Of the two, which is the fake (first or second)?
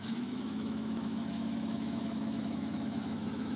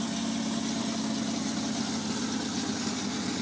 first